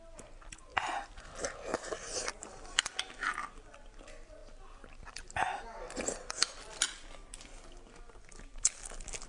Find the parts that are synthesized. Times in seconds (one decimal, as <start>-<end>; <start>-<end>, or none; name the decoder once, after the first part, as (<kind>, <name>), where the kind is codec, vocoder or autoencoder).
none